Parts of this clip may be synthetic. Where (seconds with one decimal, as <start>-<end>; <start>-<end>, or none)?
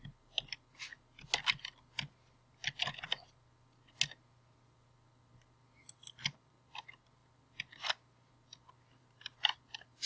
none